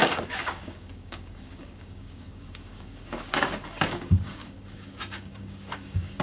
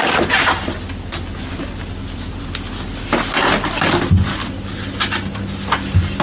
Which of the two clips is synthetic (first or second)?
first